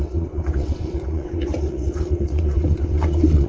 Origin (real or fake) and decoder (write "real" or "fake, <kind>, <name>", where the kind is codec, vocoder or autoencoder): fake, vocoder, WaveNeXt